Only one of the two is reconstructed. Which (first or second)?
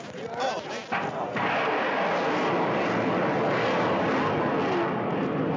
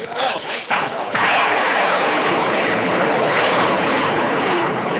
second